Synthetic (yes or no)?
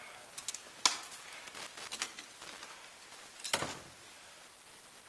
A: no